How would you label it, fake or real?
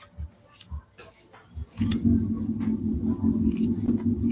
real